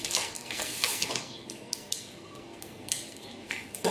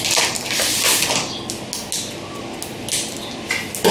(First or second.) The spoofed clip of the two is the first